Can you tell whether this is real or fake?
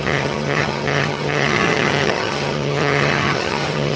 fake